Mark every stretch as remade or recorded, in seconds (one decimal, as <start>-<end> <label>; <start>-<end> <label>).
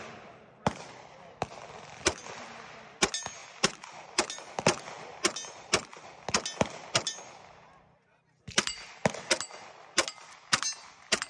0.0-11.3 recorded